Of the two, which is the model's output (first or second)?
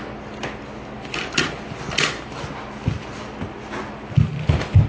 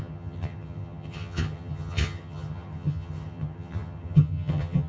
second